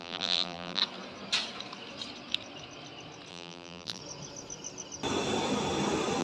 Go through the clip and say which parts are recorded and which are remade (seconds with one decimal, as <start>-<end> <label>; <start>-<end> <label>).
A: 0.0-0.8 remade; 0.8-3.3 recorded; 3.3-4.0 remade; 4.0-6.2 recorded